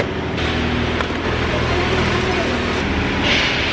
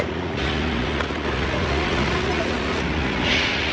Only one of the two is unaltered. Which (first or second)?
first